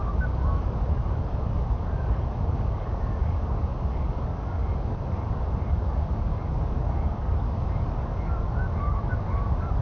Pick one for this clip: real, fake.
fake